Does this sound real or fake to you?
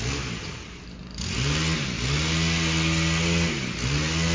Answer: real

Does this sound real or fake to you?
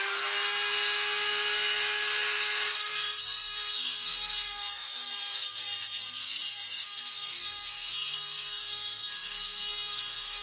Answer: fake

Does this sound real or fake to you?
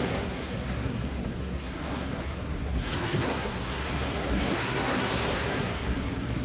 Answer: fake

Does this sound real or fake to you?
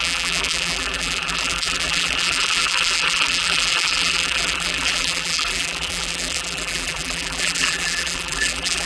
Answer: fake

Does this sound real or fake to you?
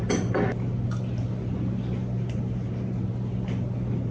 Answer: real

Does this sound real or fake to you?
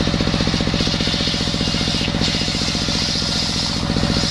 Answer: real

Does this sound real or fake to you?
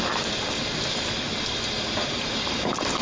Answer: real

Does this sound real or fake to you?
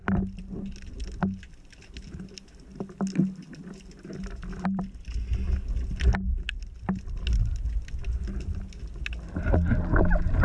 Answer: real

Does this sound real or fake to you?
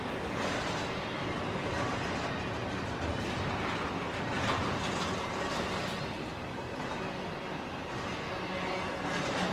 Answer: real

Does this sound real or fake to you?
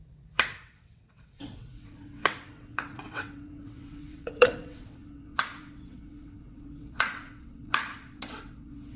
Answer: fake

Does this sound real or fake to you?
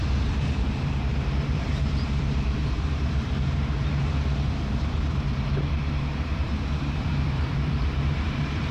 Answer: fake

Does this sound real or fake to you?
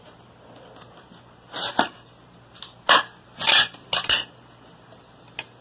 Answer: real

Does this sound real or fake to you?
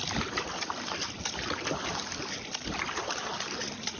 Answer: fake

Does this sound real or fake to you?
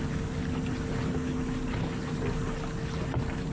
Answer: real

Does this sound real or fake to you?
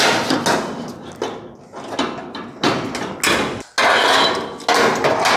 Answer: real